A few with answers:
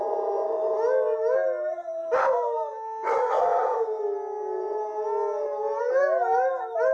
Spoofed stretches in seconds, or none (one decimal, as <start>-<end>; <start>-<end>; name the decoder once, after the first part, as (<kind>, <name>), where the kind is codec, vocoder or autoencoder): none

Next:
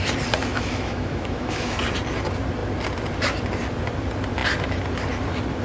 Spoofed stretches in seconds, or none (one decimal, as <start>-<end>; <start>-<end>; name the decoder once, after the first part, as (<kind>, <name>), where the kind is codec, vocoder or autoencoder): 0.5-1.8 (autoencoder, DAC-VAE)

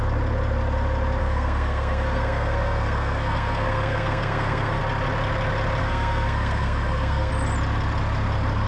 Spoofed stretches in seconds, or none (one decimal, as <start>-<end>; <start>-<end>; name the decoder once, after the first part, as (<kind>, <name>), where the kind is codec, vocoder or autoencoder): 1.2-4.8 (codec, SNAC); 5.8-7.3

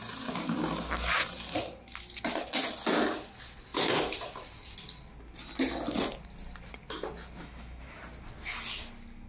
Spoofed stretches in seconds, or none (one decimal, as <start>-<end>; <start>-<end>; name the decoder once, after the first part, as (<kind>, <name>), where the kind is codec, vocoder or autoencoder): 7.4-8.0 (autoencoder, DAC-VAE)

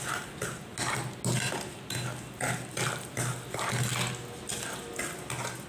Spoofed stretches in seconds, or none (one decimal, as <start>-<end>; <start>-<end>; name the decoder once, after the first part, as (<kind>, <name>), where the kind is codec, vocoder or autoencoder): none